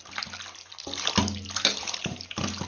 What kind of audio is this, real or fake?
real